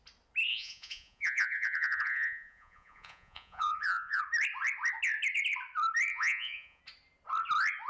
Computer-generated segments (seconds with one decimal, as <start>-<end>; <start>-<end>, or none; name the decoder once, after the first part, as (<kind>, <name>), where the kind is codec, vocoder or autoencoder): 0.5-4.2 (vocoder, Vocos); 6.1-6.8